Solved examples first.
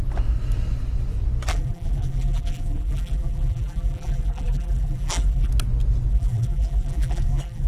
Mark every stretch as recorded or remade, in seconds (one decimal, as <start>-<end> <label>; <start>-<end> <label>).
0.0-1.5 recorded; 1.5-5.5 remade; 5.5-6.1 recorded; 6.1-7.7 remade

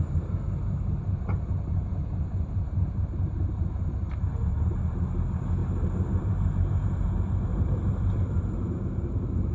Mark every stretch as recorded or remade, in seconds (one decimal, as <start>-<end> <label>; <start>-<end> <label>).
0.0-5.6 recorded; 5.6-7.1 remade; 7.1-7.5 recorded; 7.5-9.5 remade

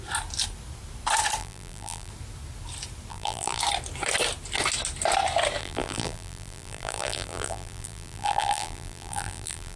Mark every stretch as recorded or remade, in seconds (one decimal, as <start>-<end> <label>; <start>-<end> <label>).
0.0-1.4 recorded; 1.4-2.1 remade; 2.1-3.1 recorded; 3.1-3.6 remade; 3.6-5.6 recorded; 5.6-9.8 remade

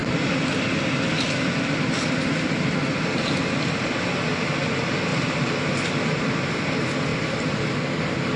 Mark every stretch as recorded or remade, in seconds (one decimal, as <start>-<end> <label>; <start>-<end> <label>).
0.0-5.1 recorded; 5.1-5.7 remade; 5.7-7.1 recorded; 7.1-7.7 remade; 7.7-8.4 recorded